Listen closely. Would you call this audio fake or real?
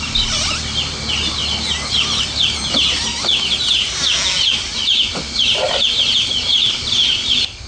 real